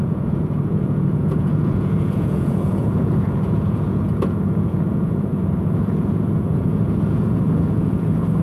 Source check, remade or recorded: remade